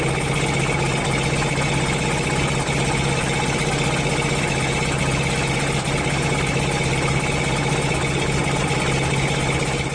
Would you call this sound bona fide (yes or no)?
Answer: yes